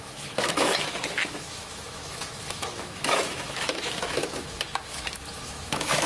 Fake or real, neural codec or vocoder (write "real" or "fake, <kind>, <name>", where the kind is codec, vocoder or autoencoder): fake, autoencoder, DAC-VAE